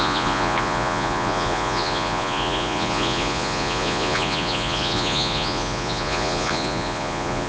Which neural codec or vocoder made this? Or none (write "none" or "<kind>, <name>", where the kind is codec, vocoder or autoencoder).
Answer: vocoder, Vocos